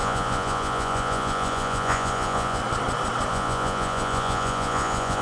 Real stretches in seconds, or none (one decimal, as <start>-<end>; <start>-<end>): 2.6-3.3